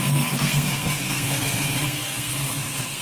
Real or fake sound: fake